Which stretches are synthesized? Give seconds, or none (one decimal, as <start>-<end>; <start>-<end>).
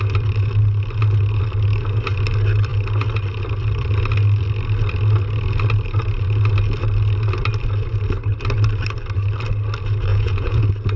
10.1-10.6